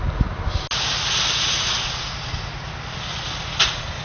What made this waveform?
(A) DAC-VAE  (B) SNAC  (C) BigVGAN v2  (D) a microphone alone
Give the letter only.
D